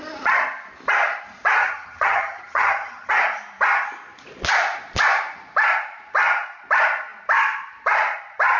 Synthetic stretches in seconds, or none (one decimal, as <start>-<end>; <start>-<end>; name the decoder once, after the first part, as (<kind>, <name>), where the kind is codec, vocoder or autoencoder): 1.6-3.1 (vocoder, HiFi-GAN)